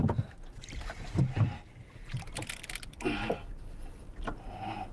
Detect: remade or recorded recorded